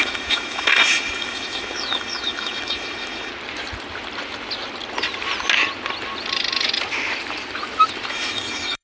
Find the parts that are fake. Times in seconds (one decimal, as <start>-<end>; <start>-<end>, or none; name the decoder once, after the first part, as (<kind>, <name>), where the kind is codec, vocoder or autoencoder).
0.0-3.3 (autoencoder, DAC-VAE); 8.1-8.8